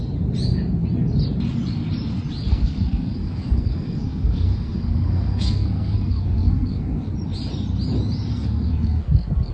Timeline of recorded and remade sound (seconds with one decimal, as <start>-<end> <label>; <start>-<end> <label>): 0.0-2.5 recorded; 2.5-7.1 remade; 7.1-8.3 recorded; 8.3-9.5 remade